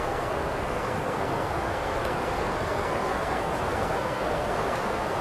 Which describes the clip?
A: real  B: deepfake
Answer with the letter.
B